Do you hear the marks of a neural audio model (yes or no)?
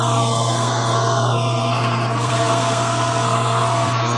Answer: yes